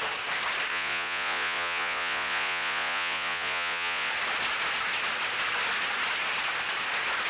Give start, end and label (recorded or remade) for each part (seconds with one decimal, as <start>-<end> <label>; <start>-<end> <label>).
0.0-0.7 recorded; 0.7-4.1 remade; 4.1-7.3 recorded

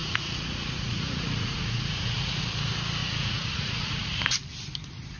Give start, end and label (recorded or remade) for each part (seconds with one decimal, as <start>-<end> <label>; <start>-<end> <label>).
0.0-2.4 remade; 2.4-3.0 recorded; 3.0-4.2 remade; 4.2-5.2 recorded

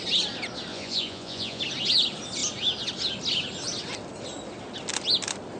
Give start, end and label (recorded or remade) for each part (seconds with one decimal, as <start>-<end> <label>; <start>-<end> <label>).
0.0-0.7 recorded; 0.7-1.6 remade; 1.6-5.6 recorded

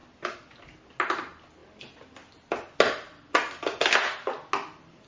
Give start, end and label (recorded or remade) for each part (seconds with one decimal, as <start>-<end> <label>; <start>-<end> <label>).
0.0-5.1 recorded

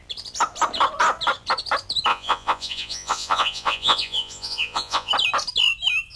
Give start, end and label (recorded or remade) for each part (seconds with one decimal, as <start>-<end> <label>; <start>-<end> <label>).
0.0-2.1 recorded; 2.1-5.1 remade; 5.1-6.2 recorded

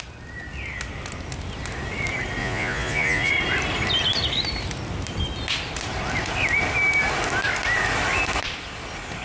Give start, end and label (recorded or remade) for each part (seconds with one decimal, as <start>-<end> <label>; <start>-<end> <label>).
0.0-2.4 recorded; 2.4-3.3 remade; 3.3-9.2 recorded

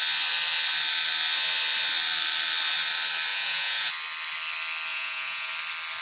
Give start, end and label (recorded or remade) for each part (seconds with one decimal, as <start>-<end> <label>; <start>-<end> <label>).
0.0-3.3 recorded; 3.3-3.9 remade; 3.9-4.9 recorded; 4.9-5.5 remade; 5.5-6.0 recorded